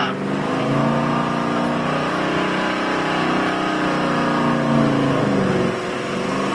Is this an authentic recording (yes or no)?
yes